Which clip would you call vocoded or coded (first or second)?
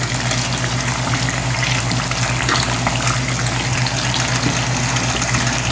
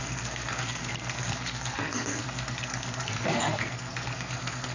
second